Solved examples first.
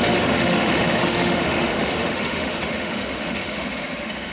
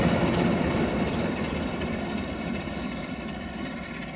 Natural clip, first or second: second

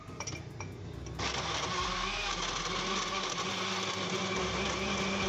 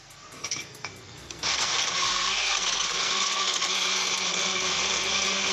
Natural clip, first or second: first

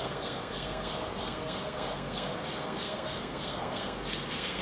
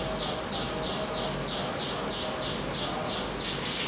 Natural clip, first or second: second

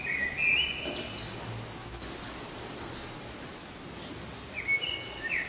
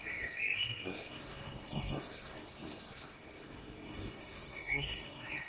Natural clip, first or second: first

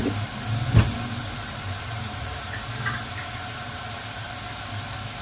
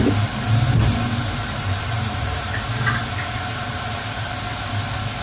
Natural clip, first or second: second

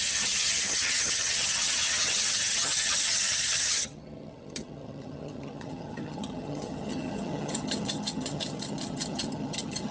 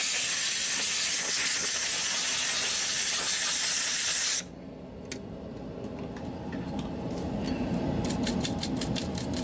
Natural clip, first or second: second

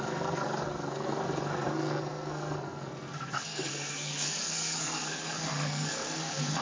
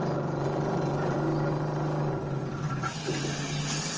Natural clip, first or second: second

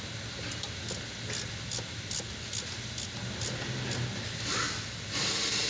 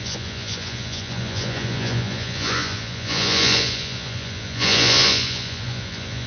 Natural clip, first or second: first